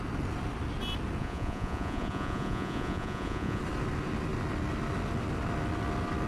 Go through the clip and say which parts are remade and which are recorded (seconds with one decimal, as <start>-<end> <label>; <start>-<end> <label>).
0.0-1.2 recorded; 1.2-3.6 remade; 3.6-6.3 recorded